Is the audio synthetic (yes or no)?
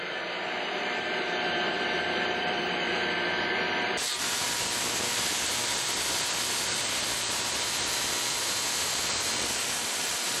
yes